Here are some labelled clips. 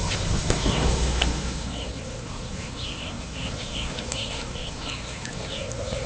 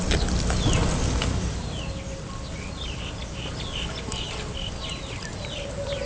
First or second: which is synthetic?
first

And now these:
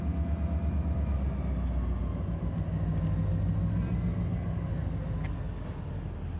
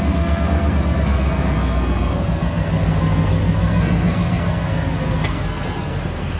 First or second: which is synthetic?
second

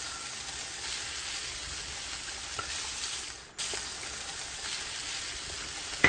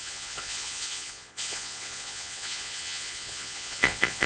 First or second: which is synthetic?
second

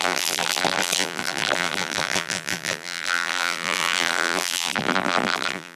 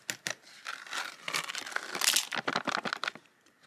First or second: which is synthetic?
first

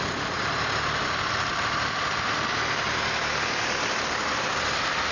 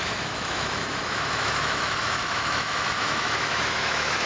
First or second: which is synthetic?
second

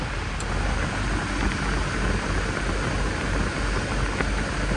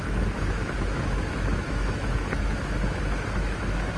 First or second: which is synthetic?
second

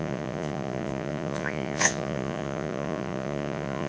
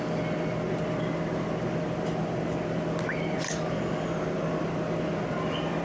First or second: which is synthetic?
first